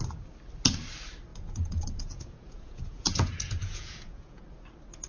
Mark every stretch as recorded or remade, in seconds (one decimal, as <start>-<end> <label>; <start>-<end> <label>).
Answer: 0.0-1.3 recorded; 1.3-4.4 remade; 4.4-5.1 recorded